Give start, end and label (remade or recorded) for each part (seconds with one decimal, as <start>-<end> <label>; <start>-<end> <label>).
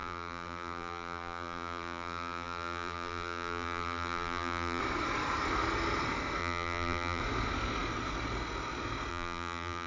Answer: 0.0-4.8 remade; 4.8-6.4 recorded; 6.4-7.2 remade; 7.2-9.1 recorded; 9.1-9.9 remade